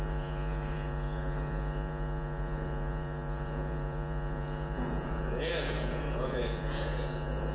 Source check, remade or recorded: remade